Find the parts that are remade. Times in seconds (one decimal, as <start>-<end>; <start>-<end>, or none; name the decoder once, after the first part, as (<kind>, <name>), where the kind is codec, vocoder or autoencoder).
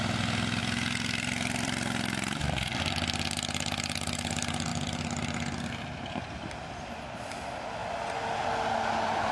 0.6-2.9 (vocoder, BigVGAN v2); 7.8-8.4